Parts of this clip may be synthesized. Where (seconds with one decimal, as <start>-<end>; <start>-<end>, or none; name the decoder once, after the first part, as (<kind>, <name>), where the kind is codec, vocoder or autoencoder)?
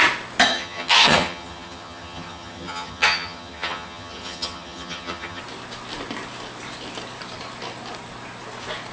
0.5-5.4 (vocoder, HiFi-GAN)